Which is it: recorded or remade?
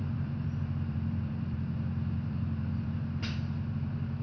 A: remade